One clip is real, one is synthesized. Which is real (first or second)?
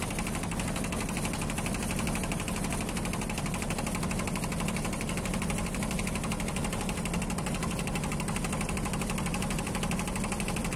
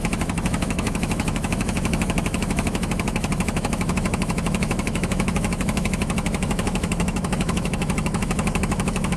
first